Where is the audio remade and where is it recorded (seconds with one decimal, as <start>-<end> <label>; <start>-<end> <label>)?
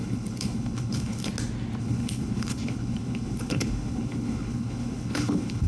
0.0-1.3 remade; 1.3-1.8 recorded; 1.8-5.7 remade